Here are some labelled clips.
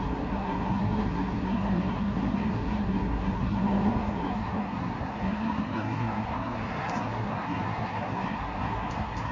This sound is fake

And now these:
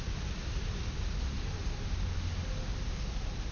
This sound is real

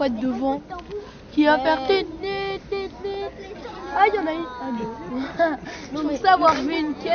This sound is real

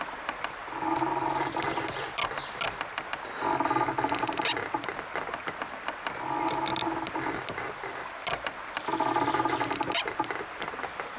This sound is real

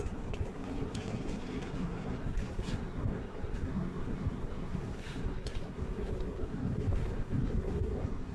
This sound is fake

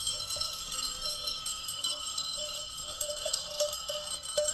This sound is fake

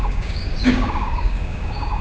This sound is fake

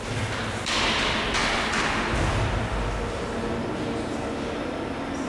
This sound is real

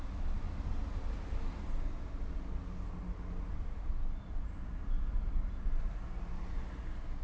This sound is real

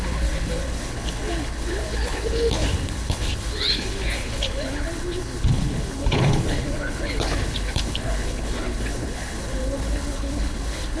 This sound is fake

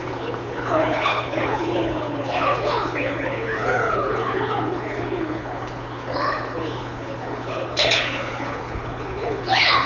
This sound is fake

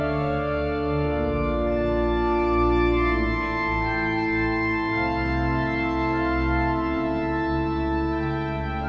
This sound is real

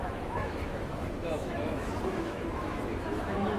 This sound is fake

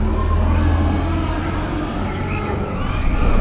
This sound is real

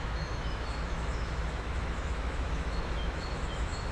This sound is fake